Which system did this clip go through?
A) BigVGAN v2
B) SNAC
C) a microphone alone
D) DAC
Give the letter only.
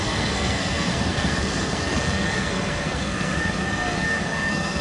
B